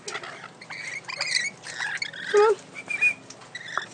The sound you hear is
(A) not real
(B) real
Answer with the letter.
B